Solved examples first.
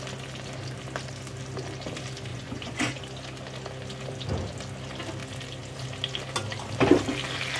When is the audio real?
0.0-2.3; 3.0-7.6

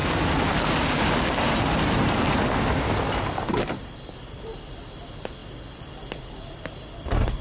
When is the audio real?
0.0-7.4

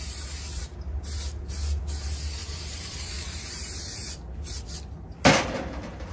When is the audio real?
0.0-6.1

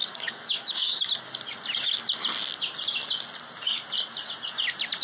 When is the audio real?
1.1-5.0

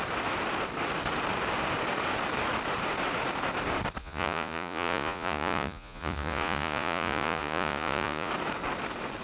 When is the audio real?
0.0-4.0; 8.3-9.2

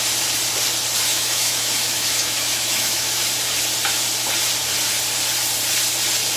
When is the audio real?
0.0-1.1; 3.2-6.4

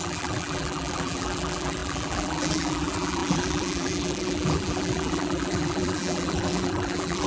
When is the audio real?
none

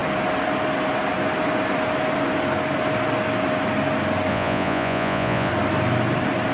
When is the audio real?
0.0-4.3; 5.5-6.5